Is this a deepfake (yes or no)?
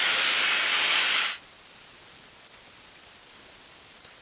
no